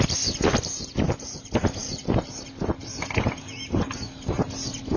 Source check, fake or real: real